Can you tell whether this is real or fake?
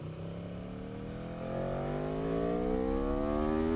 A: real